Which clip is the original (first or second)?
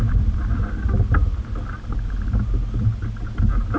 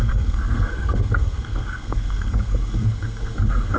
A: first